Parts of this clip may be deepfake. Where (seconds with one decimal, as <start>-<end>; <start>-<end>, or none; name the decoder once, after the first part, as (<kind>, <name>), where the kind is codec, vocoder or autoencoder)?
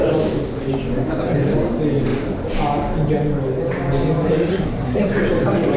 4.5-5.0 (codec, SNAC)